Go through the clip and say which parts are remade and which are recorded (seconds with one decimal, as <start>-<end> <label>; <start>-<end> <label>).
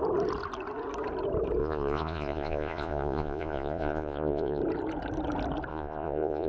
0.0-1.6 recorded; 1.6-4.6 remade; 4.6-5.7 recorded; 5.7-6.5 remade